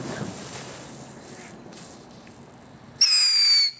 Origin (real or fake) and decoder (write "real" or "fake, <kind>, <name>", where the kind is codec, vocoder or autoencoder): real